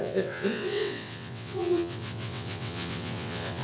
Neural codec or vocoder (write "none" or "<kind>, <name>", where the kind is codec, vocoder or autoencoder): vocoder, WaveNeXt